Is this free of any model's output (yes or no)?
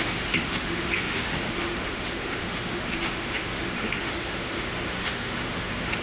no